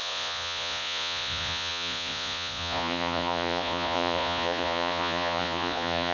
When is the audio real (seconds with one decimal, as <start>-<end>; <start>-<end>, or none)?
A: none